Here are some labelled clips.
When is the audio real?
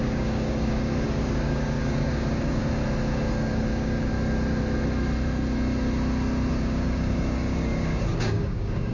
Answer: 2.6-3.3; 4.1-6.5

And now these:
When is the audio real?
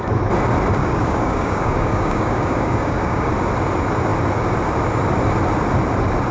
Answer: 0.0-0.8; 3.3-6.3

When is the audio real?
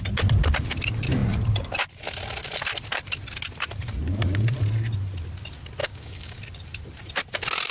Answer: 0.0-5.8; 6.4-7.7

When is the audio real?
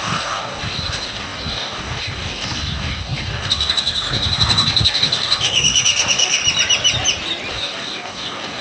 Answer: 6.4-7.5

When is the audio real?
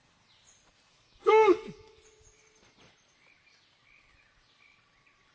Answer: 0.0-0.9; 2.0-5.3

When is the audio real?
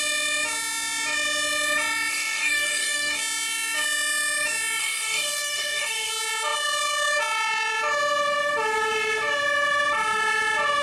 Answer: 0.0-2.1; 3.2-4.8; 6.1-10.8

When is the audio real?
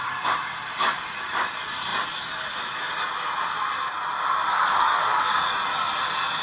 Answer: 0.0-4.5; 5.4-6.4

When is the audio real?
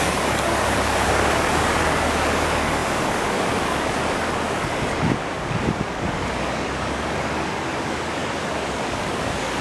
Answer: none